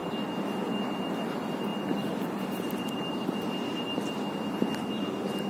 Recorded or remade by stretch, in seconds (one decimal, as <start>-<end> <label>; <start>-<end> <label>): 0.0-1.1 remade; 1.1-1.7 recorded; 1.7-5.0 remade; 5.0-5.5 recorded